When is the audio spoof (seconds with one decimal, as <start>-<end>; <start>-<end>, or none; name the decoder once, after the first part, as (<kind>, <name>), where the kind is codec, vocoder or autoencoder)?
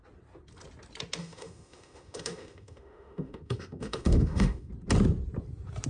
1.2-4.7 (autoencoder, DAC-VAE)